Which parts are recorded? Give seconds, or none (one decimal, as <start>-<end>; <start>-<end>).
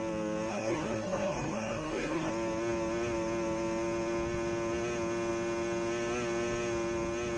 0.0-0.5; 2.3-7.4